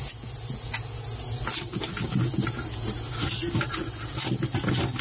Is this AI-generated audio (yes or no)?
no